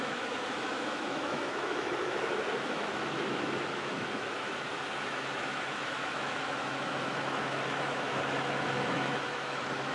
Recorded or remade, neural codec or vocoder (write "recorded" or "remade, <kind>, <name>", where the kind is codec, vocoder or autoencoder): remade, autoencoder, DAC-VAE